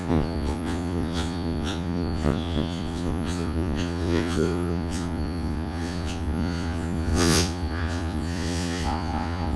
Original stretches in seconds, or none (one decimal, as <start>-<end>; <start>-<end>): none